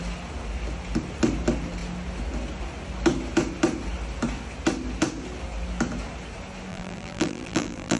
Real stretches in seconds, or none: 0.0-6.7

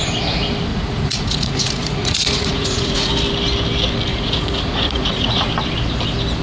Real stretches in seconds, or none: 0.0-0.7; 3.1-4.1; 5.5-6.4

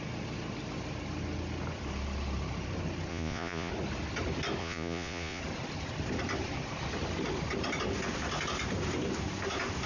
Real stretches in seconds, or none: 0.0-3.1; 3.7-4.6; 5.4-9.9

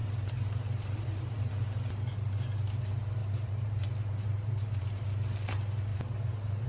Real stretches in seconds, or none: 1.5-3.2; 4.9-5.9